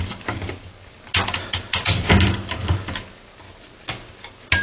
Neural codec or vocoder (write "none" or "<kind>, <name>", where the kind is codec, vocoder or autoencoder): none